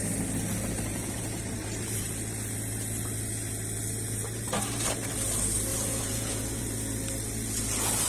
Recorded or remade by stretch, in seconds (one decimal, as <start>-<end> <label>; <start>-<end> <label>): 0.0-0.9 recorded; 0.9-1.4 remade; 1.4-5.7 recorded; 5.7-6.6 remade; 6.6-8.1 recorded